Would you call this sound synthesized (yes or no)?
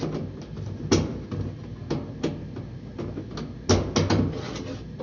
no